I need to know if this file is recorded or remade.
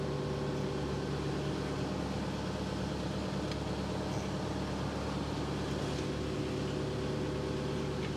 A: recorded